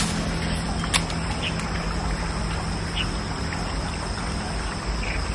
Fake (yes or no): no